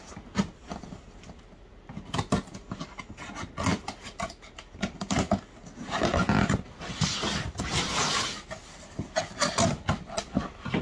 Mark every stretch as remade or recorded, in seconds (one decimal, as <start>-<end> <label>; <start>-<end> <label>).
0.0-10.8 recorded